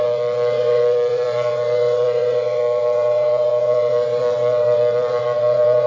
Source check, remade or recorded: remade